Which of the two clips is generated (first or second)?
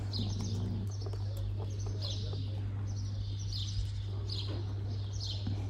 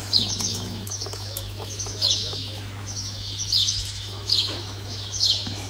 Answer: second